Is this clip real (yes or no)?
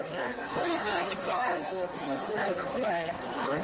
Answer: no